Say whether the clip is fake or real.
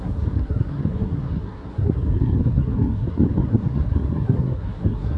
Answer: fake